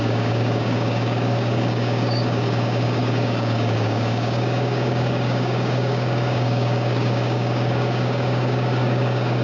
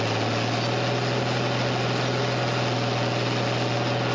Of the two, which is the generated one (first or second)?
first